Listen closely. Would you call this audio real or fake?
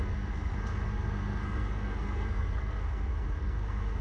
fake